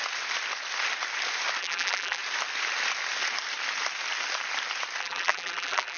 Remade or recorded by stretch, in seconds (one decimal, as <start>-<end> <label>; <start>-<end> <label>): 0.0-1.6 recorded; 1.6-2.2 remade; 2.2-5.0 recorded; 5.0-6.0 remade

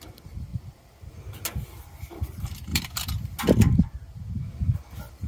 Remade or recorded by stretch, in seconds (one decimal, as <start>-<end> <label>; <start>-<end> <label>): 0.0-4.0 remade; 4.0-4.5 recorded; 4.5-5.3 remade